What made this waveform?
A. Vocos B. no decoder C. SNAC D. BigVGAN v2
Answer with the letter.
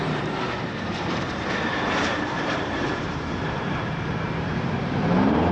D